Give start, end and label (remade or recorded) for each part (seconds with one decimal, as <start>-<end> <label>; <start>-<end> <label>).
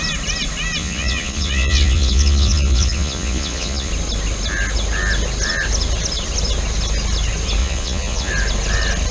0.0-0.8 recorded; 0.8-3.9 remade; 3.9-7.6 recorded; 7.6-8.3 remade; 8.3-9.1 recorded